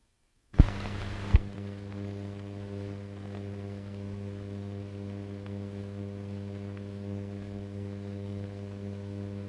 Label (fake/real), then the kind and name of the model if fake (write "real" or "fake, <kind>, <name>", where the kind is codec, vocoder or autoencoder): fake, codec, SNAC